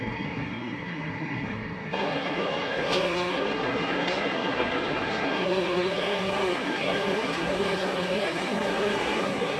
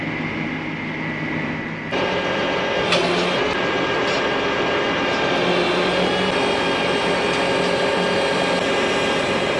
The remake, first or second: first